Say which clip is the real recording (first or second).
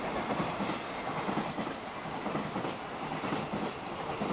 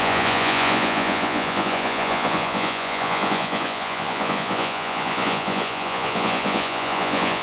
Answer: first